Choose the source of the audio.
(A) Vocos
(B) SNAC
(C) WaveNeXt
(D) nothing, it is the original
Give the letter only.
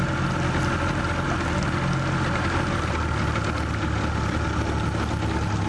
D